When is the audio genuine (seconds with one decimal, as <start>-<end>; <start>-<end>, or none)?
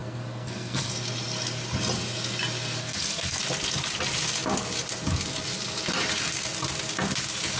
0.9-2.8; 3.4-7.6